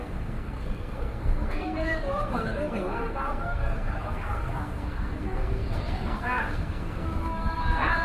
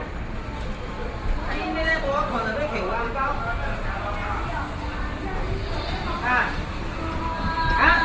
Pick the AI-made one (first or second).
first